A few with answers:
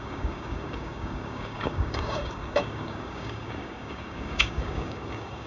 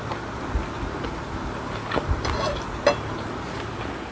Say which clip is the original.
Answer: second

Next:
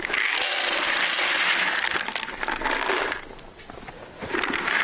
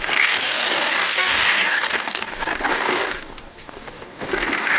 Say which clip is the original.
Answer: first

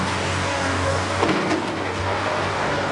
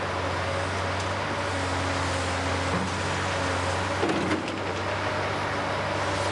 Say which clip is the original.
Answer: second